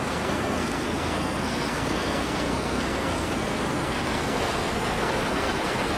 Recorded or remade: remade